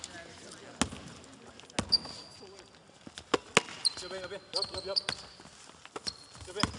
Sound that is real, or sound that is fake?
real